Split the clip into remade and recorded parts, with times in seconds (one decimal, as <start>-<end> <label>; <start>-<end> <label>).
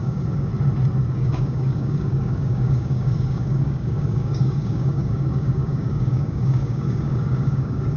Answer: 0.0-0.5 remade; 0.5-1.1 recorded; 1.1-8.0 remade